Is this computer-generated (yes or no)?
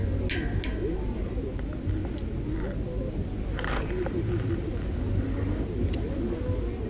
no